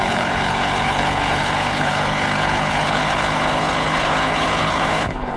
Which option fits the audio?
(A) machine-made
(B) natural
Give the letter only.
A